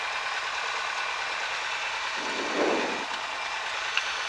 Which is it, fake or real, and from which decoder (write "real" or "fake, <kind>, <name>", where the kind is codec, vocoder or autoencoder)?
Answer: real